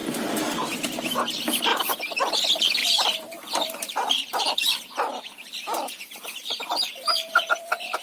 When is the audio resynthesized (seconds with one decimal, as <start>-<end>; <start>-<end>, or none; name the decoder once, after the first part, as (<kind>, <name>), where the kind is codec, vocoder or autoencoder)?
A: 0.0-0.8 (vocoder, BigVGAN v2); 1.7-2.4; 2.8-7.5